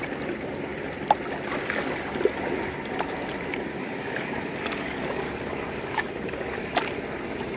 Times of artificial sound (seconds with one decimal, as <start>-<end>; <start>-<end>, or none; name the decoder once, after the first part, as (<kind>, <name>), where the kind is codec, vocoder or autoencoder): 3.7-6.7 (codec, DAC)